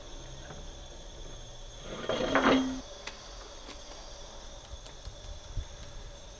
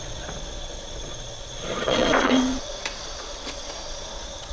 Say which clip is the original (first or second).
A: first